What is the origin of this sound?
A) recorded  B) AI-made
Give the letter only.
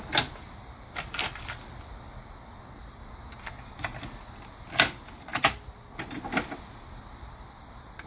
A